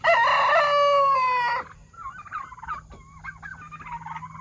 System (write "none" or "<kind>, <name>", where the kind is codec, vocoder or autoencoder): none